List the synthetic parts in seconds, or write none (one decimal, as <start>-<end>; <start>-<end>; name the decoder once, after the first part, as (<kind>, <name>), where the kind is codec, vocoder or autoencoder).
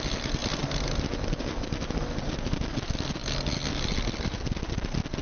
none